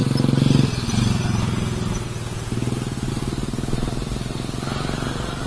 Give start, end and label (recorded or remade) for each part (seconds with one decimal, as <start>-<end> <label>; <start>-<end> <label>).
0.0-5.5 recorded